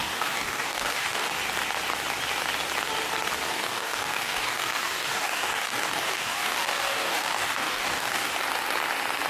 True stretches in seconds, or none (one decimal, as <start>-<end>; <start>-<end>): 1.3-3.5; 8.3-9.3